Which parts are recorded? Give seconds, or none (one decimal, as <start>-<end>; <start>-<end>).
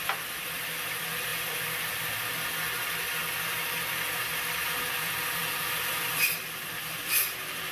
0.0-1.3; 2.2-3.2; 3.9-5.4; 7.1-7.7